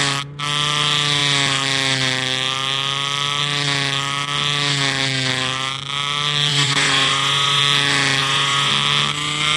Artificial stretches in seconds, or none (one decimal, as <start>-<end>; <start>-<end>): 6.5-7.6; 8.2-8.7